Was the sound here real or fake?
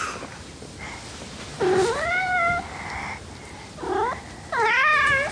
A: real